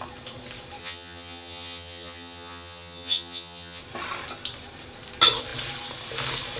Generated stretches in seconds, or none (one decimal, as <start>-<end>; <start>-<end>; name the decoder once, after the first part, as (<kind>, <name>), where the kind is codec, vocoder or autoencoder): 0.8-3.8 (vocoder, HiFi-GAN)